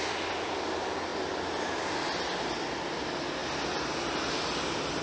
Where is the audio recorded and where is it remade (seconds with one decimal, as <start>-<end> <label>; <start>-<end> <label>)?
0.0-5.0 recorded